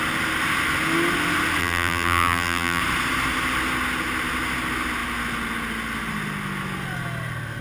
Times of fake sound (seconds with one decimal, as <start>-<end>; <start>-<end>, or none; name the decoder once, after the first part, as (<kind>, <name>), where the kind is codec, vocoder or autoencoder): 1.6-2.8 (vocoder, BigVGAN v2)